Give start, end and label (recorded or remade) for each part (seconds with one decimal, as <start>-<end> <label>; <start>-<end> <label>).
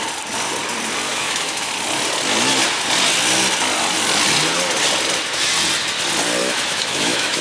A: 0.0-1.1 recorded; 1.1-1.7 remade; 1.7-6.4 recorded; 6.4-7.4 remade